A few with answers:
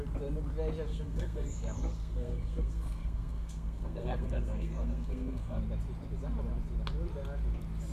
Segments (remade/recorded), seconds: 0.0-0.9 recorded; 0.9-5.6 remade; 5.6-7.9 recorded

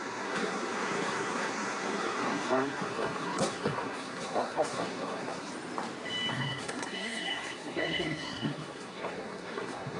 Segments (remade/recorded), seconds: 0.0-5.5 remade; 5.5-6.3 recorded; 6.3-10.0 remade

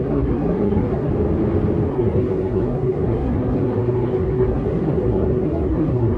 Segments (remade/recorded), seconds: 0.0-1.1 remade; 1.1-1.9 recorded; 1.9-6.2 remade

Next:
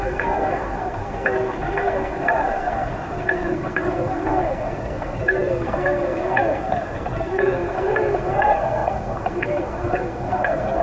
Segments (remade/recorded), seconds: 0.0-10.8 remade